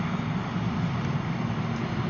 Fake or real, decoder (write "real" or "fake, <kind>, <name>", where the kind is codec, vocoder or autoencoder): real